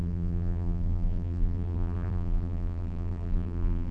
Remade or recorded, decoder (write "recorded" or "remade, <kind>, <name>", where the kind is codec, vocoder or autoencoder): remade, vocoder, BigVGAN v2